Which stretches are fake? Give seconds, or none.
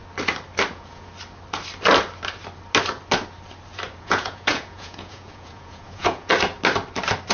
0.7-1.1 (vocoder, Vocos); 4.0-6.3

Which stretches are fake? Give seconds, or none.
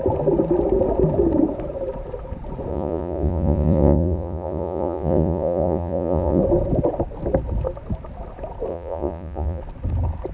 2.7-6.4 (vocoder, Vocos); 8.7-9.6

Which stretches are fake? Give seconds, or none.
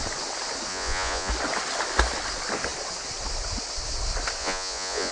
0.7-1.3 (vocoder, Vocos); 4.4-5.1